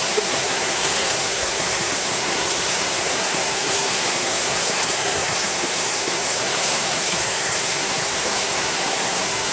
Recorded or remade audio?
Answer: remade